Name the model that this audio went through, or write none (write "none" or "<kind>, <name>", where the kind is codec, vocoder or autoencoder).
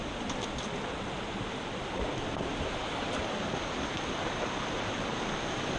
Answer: none